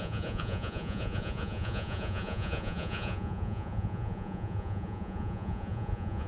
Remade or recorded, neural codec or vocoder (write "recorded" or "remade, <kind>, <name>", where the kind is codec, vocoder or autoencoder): remade, vocoder, Vocos